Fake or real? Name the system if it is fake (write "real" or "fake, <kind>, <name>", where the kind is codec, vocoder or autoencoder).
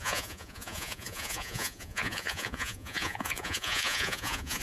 fake, vocoder, Vocos